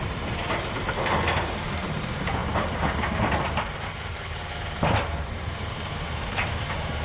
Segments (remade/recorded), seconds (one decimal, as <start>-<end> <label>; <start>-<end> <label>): 0.0-0.4 remade; 0.4-1.7 recorded; 1.7-7.0 remade

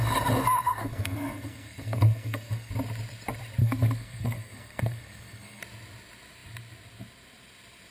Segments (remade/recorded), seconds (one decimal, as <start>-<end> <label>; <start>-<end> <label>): 0.0-0.6 recorded; 0.6-2.7 remade; 2.7-3.6 recorded; 3.6-5.6 remade; 5.6-7.9 recorded